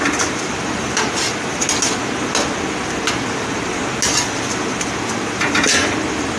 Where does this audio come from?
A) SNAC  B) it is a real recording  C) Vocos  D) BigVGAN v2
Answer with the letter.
B